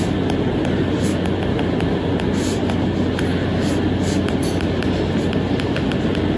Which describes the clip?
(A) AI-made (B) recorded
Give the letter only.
B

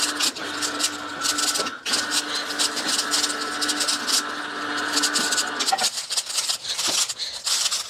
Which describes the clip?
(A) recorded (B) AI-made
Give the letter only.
A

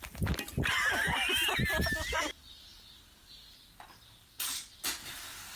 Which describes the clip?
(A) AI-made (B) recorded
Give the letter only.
B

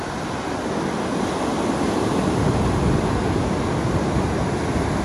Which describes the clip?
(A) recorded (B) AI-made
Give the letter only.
A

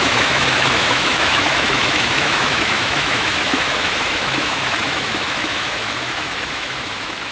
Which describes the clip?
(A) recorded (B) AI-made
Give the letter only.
B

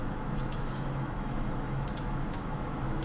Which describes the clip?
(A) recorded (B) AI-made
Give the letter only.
B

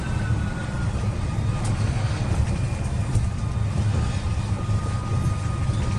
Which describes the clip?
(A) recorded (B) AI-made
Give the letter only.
A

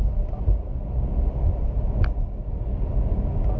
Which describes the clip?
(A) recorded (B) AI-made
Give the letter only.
A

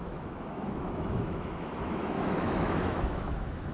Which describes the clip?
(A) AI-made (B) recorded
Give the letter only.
A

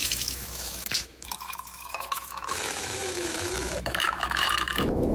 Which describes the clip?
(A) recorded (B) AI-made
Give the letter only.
B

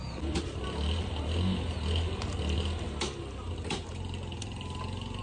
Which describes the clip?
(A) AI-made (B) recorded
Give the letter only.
B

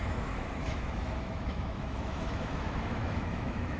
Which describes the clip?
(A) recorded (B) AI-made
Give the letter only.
B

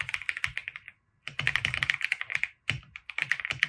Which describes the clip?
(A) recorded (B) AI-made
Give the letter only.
A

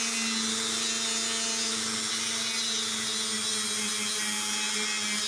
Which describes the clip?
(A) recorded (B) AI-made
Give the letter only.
A